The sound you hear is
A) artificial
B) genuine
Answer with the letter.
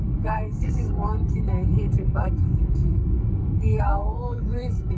A